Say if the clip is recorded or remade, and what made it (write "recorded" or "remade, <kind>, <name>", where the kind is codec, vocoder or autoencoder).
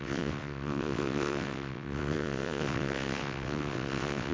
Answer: remade, vocoder, WaveNeXt